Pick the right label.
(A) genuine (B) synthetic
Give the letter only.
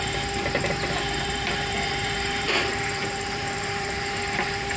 B